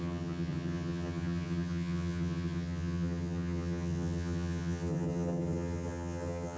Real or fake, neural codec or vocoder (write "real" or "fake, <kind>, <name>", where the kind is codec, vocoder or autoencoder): fake, vocoder, HiFi-GAN